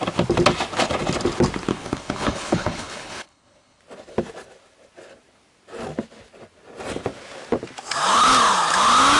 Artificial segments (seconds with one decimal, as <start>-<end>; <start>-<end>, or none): 1.7-3.8